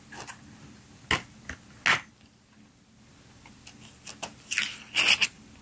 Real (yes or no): yes